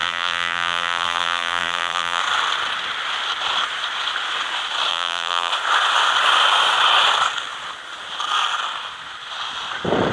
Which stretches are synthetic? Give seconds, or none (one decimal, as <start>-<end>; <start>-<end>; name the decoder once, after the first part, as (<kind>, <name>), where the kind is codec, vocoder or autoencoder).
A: 0.0-2.2 (vocoder, BigVGAN v2); 4.9-5.5